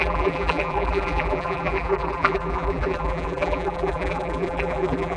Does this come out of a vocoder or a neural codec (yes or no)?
yes